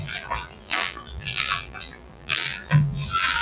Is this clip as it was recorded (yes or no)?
no